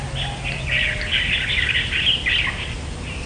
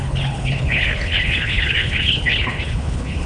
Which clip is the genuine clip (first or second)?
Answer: first